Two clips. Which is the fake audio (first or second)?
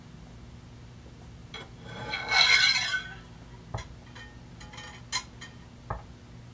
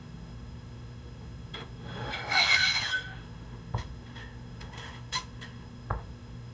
second